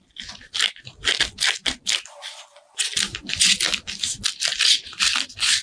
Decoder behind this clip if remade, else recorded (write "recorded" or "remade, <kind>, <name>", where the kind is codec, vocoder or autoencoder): recorded